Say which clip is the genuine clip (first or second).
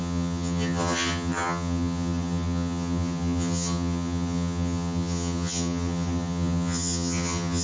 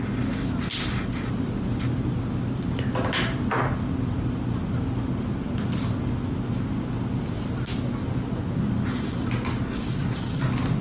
second